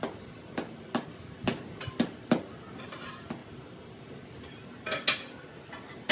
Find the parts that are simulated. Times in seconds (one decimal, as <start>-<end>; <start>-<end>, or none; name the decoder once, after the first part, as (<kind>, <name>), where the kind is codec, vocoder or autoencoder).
none